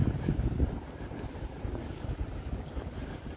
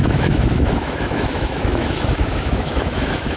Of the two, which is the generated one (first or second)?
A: second